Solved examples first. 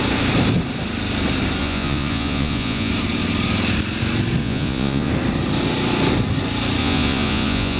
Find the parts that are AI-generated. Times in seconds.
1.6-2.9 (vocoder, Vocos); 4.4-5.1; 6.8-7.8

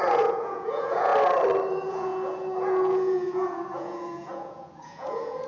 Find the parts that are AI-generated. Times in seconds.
0.0-1.1 (vocoder, Vocos); 1.7-5.5

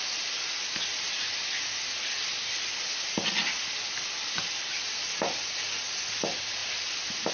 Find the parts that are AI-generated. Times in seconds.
none

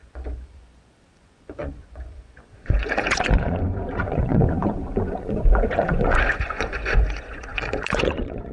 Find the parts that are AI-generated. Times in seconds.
0.0-8.5 (vocoder, Vocos)

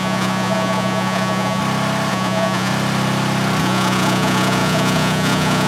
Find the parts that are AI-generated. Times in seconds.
0.0-1.6 (vocoder, Vocos); 2.1-2.7; 3.6-5.7

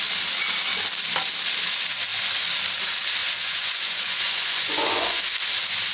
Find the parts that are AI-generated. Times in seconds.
3.2-5.2 (vocoder, Vocos)